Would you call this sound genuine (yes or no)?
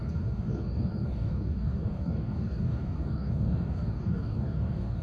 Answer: no